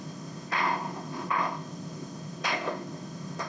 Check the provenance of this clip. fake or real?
fake